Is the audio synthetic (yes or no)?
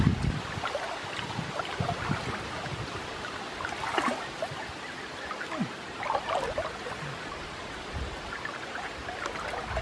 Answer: no